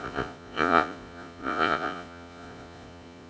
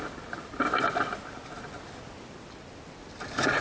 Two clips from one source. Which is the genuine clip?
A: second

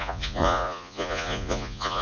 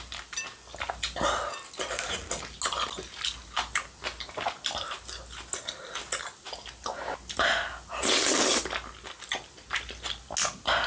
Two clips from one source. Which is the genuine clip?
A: second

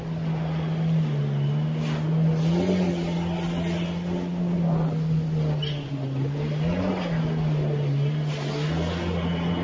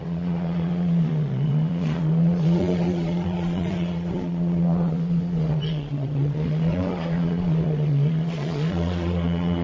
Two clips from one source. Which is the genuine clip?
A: first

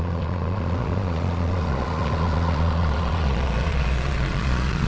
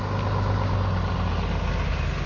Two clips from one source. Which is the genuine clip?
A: second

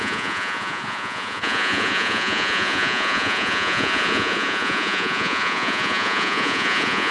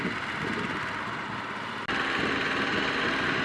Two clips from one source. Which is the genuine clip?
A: second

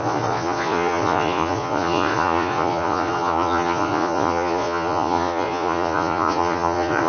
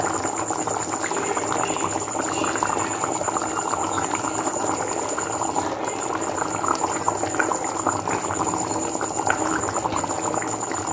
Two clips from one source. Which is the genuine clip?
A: second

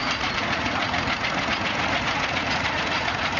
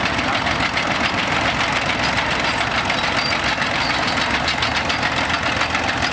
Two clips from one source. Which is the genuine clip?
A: second